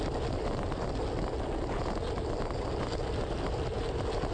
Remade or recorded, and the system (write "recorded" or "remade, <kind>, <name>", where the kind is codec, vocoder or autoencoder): recorded